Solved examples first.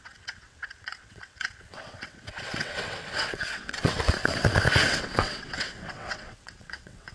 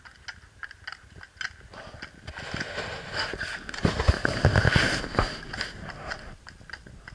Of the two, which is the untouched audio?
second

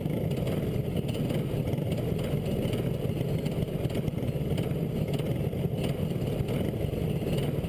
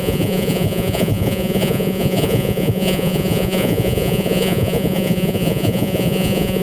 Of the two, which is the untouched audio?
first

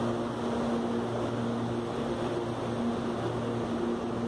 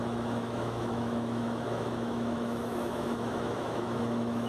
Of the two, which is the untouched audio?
first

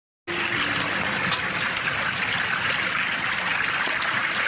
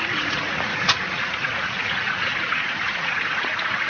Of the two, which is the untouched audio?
first